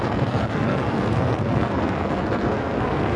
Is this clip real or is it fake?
fake